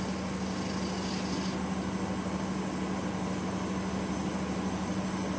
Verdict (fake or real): real